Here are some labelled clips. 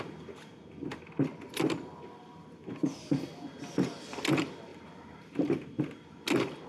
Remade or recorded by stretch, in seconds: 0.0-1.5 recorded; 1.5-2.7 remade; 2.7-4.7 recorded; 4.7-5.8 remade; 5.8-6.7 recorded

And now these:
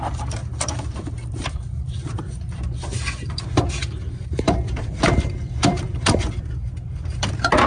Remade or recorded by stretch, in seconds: 0.0-0.4 recorded; 0.4-5.0 remade; 5.0-5.7 recorded; 5.7-6.4 remade; 6.4-7.7 recorded

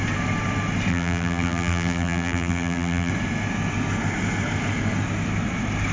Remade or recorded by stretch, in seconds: 0.0-0.9 recorded; 0.9-3.1 remade; 3.1-5.9 recorded

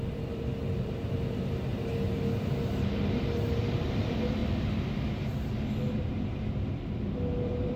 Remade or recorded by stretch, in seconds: 0.0-1.7 remade; 1.7-3.6 recorded; 3.6-4.4 remade; 4.4-5.9 recorded; 5.9-7.8 remade

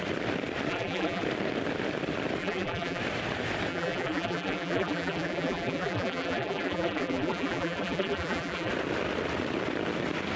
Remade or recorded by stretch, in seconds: 0.0-0.7 recorded; 0.7-1.2 remade; 1.2-2.4 recorded; 2.4-3.0 remade; 3.0-3.7 recorded; 3.7-8.7 remade; 8.7-10.4 recorded